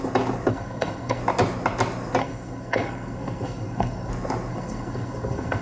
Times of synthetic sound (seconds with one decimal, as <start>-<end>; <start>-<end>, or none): 0.5-1.2; 2.2-4.1; 4.5-5.6